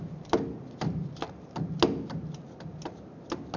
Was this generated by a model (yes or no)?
no